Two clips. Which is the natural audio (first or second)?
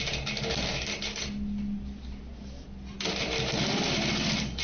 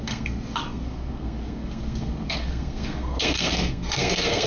first